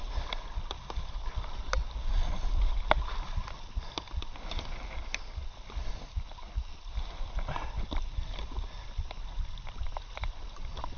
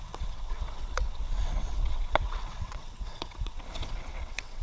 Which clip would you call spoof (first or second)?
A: second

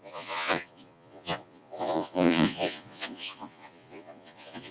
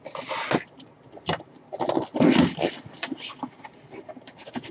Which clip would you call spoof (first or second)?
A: first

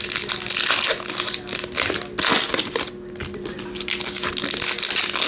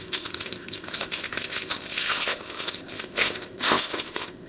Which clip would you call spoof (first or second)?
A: second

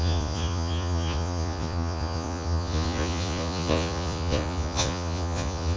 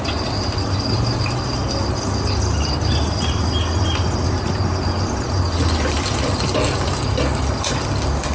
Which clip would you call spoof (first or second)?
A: first